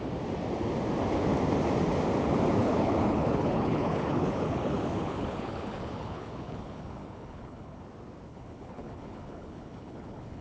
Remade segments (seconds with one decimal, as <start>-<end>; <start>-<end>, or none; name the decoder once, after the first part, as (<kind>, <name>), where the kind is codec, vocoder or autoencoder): 2.6-7.8 (codec, HILCodec); 8.3-10.4